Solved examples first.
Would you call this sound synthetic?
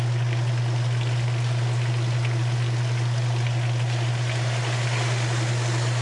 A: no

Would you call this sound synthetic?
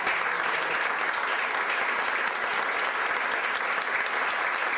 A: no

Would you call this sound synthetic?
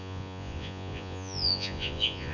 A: yes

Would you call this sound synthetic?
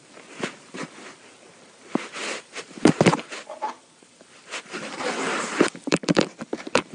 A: yes